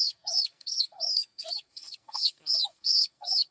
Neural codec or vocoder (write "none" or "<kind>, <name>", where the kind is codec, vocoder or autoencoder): codec, SNAC